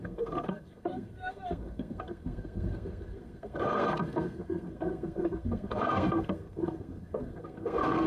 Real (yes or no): no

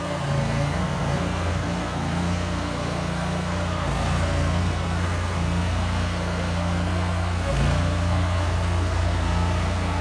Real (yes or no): no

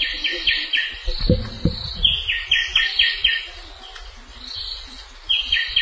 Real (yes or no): yes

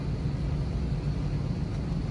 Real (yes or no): yes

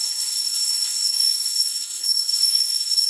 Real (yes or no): no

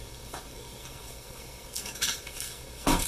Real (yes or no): no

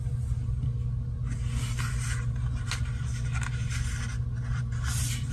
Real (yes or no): yes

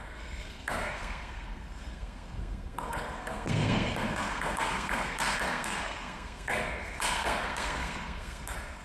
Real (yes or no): no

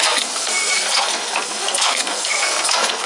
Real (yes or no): no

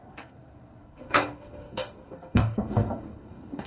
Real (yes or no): no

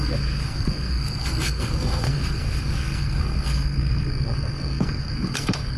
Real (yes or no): no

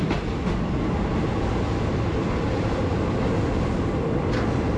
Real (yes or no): yes